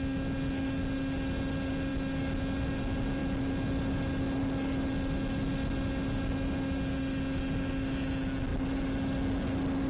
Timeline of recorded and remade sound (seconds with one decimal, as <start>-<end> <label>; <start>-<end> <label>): 0.0-9.9 recorded